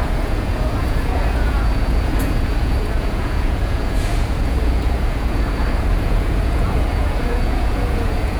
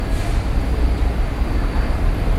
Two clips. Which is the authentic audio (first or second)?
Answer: second